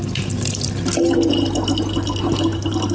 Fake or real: real